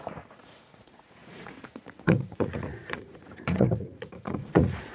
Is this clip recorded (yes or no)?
no